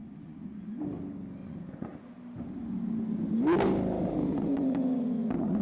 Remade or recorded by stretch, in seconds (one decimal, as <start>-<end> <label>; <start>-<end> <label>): 0.0-0.8 remade; 0.8-1.4 recorded; 1.4-2.1 remade; 2.1-4.3 recorded; 4.3-5.6 remade